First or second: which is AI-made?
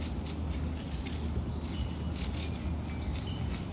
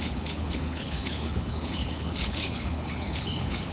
second